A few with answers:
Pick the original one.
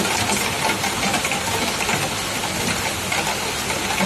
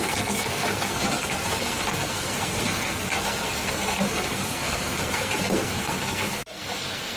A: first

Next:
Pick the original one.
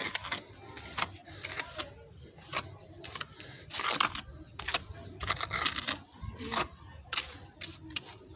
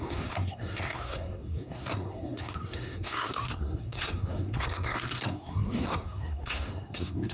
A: first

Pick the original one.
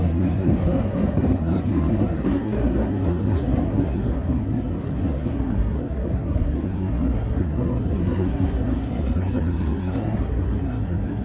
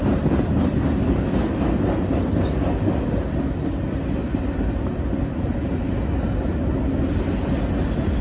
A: second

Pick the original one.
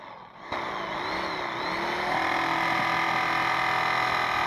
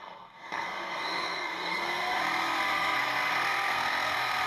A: first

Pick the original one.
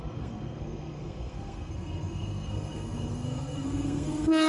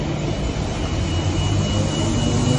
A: second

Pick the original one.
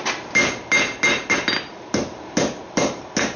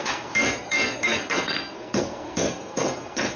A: first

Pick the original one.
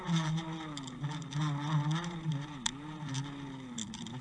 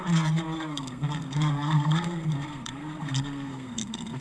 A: first